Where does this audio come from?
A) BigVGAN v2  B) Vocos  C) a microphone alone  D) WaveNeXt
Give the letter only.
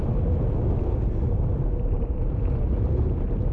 C